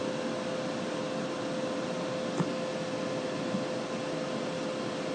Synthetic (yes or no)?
no